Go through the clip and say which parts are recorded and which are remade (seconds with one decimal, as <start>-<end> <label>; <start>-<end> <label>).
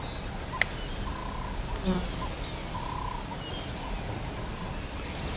0.0-5.4 recorded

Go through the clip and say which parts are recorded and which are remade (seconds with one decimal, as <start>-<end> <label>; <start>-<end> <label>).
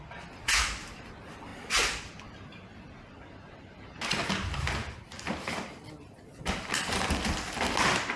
0.0-1.5 recorded; 1.5-3.3 remade; 3.3-4.8 recorded; 4.8-6.9 remade; 6.9-8.2 recorded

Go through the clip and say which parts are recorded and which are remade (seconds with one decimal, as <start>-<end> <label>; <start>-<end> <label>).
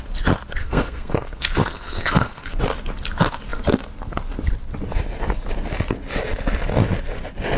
0.0-0.6 recorded; 0.6-2.6 remade; 2.6-7.6 recorded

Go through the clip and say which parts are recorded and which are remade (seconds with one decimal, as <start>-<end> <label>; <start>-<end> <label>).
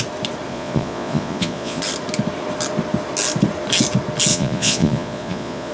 0.0-0.5 recorded; 0.5-1.8 remade; 1.8-4.3 recorded; 4.3-5.7 remade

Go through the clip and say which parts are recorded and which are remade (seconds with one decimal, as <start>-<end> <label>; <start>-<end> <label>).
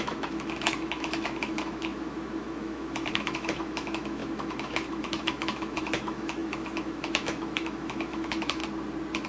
0.0-8.6 remade; 8.6-9.3 recorded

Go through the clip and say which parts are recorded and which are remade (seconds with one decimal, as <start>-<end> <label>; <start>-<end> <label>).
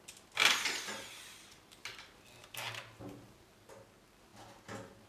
0.0-5.1 recorded